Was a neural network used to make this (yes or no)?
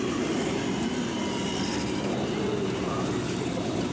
yes